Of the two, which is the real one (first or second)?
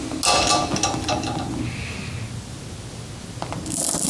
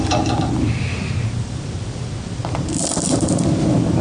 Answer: first